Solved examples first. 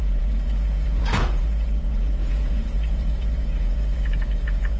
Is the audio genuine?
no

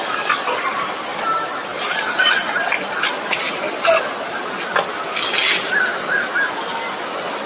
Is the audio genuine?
yes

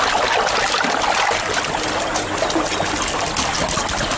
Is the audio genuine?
yes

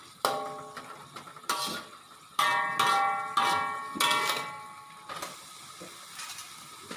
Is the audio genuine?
yes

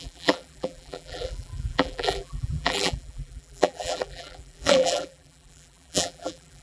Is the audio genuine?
no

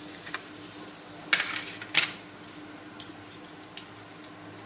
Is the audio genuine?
yes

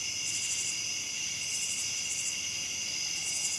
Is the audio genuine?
yes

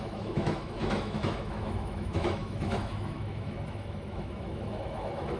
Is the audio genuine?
no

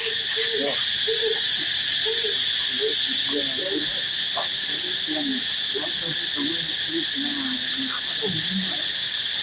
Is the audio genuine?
yes